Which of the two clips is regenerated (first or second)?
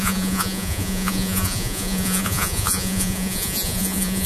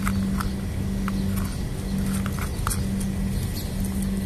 first